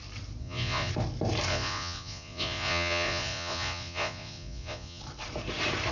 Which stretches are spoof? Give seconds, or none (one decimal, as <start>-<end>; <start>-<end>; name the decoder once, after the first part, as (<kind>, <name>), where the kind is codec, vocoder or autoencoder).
0.4-0.9 (vocoder, Vocos); 1.5-5.0